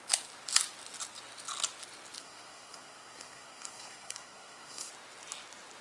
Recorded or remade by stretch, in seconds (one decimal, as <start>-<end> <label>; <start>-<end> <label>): 0.0-2.2 recorded; 2.2-4.9 remade; 4.9-5.8 recorded